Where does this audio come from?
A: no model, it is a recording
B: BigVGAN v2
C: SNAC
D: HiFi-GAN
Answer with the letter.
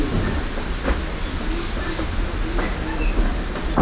A